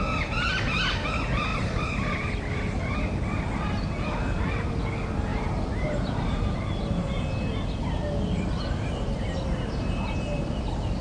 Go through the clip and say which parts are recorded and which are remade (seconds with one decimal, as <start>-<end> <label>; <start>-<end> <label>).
0.0-5.3 recorded; 5.3-6.6 remade; 6.6-11.0 recorded